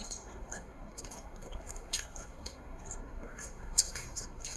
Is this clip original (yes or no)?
no